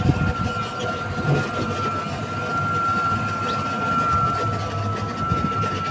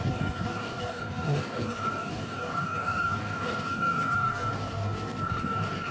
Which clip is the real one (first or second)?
first